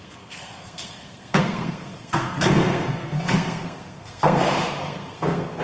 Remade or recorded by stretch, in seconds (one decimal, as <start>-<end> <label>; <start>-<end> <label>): 0.0-5.6 remade